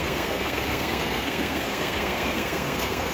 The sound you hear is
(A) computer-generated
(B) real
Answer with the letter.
A